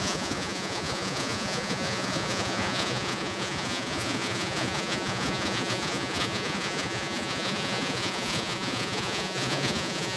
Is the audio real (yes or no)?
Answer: no